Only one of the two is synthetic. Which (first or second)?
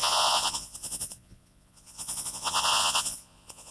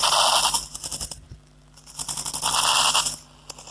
first